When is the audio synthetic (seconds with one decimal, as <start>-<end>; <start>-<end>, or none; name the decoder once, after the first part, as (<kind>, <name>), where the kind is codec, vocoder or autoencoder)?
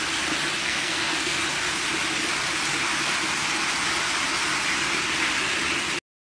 0.6-1.4 (codec, SNAC)